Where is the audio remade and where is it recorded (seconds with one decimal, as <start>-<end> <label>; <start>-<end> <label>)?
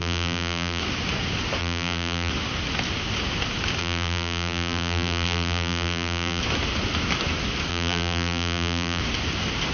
0.0-0.8 remade; 0.8-1.6 recorded; 1.6-2.3 remade; 2.3-3.8 recorded; 3.8-6.4 remade; 6.4-7.7 recorded; 7.7-9.0 remade; 9.0-9.7 recorded